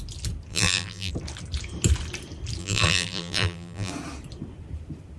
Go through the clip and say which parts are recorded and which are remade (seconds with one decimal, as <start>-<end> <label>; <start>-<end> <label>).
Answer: 0.0-0.5 recorded; 0.5-1.1 remade; 1.1-2.6 recorded; 2.6-3.9 remade; 3.9-5.2 recorded